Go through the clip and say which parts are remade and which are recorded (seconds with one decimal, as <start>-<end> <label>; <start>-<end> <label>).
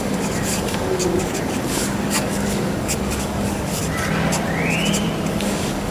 0.0-3.8 remade; 3.8-5.3 recorded; 5.3-5.9 remade